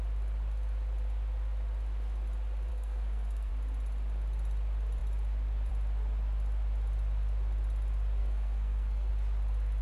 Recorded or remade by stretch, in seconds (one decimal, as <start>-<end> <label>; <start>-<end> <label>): 0.0-2.7 recorded; 2.7-3.5 remade; 3.5-8.2 recorded; 8.2-9.1 remade; 9.1-9.8 recorded